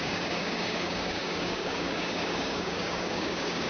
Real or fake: fake